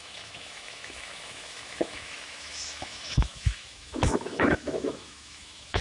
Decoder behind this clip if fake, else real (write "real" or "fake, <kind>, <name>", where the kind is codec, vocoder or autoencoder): fake, autoencoder, DAC-VAE